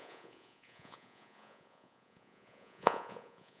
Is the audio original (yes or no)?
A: no